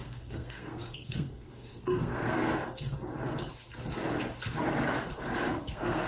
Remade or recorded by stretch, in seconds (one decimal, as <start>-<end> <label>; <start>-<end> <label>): 0.0-2.4 remade; 2.4-5.5 recorded; 5.5-6.1 remade